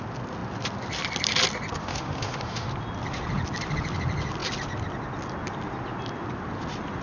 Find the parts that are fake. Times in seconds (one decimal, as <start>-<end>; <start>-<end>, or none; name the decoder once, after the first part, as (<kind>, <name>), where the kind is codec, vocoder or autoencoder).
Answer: 1.8-2.7 (autoencoder, DAC-VAE)